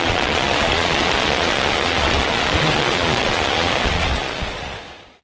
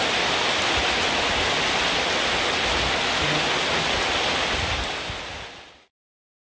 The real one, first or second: second